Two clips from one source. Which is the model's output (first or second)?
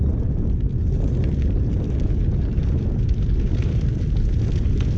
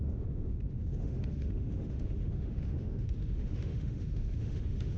second